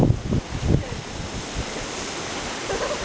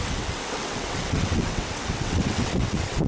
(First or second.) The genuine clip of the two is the first